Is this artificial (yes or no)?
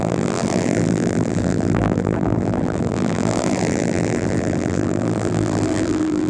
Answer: yes